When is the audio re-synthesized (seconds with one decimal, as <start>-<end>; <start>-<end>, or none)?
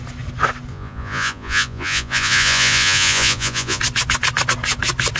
0.7-3.8